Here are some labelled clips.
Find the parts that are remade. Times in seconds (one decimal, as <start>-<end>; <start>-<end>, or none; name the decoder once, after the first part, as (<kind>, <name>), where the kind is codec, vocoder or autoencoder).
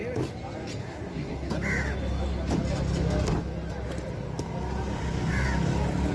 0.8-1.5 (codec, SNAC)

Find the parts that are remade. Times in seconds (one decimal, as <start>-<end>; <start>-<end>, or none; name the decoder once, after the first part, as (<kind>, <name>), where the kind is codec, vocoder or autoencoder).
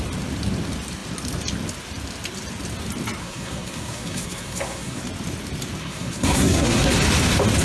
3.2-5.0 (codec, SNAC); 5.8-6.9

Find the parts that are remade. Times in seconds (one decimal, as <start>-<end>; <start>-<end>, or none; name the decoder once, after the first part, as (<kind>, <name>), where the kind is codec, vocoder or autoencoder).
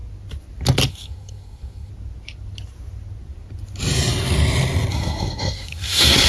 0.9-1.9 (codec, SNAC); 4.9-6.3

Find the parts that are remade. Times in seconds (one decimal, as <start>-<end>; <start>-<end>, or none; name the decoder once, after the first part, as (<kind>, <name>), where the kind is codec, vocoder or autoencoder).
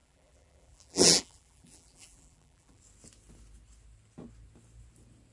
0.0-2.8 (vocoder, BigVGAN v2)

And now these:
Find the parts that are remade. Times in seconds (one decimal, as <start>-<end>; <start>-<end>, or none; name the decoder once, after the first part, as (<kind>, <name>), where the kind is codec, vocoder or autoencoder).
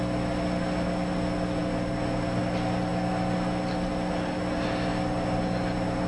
none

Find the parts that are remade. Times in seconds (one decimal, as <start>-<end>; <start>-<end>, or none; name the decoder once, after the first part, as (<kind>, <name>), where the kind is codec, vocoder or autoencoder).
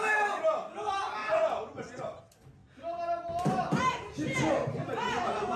1.2-2.2 (vocoder, Vocos)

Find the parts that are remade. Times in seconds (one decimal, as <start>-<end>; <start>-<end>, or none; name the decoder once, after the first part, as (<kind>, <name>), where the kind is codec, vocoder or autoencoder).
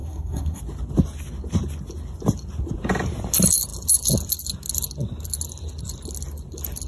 0.0-0.6 (codec, SNAC)